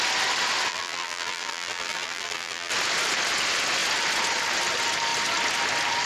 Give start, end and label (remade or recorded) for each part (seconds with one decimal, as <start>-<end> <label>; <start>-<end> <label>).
0.0-0.7 recorded; 0.7-2.7 remade; 2.7-6.1 recorded

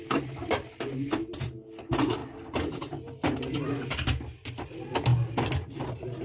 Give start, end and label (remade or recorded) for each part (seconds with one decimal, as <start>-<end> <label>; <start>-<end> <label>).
0.0-6.2 recorded

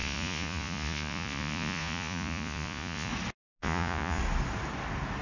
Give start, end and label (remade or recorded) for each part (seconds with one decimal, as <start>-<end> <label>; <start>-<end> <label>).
0.0-3.1 remade; 3.1-3.6 recorded; 3.6-4.2 remade; 4.2-5.2 recorded

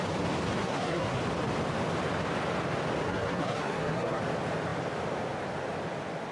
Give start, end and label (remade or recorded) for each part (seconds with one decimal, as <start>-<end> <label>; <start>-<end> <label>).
0.0-0.6 recorded; 0.6-1.2 remade; 1.2-3.0 recorded; 3.0-4.2 remade; 4.2-6.3 recorded

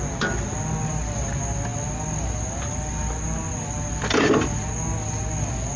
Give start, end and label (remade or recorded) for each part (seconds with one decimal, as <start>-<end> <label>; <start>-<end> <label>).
0.0-5.8 recorded

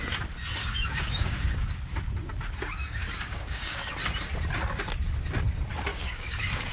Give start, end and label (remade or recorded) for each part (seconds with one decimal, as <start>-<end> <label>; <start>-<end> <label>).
0.0-0.6 recorded; 0.6-1.7 remade; 1.7-2.8 recorded; 2.8-3.9 remade; 3.9-5.9 recorded; 5.9-6.7 remade

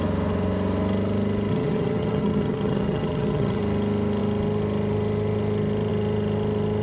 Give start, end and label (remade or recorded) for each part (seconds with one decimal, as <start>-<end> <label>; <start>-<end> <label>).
0.0-1.5 recorded; 1.5-3.6 remade; 3.6-6.8 recorded